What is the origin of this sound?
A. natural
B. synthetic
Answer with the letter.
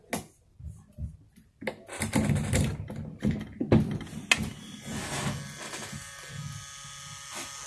A